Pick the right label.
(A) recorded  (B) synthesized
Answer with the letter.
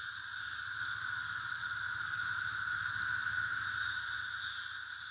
A